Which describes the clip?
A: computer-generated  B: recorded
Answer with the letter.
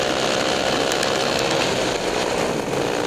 B